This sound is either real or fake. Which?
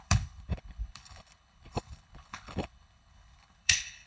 fake